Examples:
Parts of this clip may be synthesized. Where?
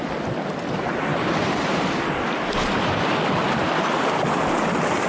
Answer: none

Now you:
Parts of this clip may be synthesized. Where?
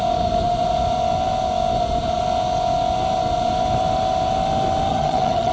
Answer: 4.9-5.5 (vocoder, HiFi-GAN)